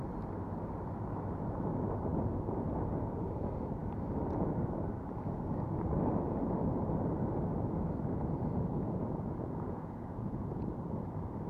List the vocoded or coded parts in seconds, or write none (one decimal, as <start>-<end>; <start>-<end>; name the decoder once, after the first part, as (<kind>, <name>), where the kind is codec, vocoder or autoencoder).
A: 8.7-10.7 (vocoder, Vocos)